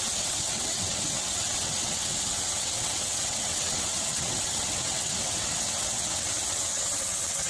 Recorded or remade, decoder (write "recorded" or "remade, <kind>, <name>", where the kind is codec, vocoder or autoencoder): remade, vocoder, WaveNeXt